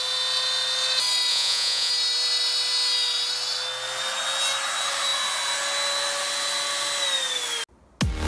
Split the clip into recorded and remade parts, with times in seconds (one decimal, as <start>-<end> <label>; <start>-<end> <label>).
0.0-1.3 recorded; 1.3-1.9 remade; 1.9-8.3 recorded